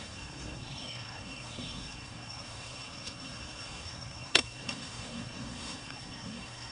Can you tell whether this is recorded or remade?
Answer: remade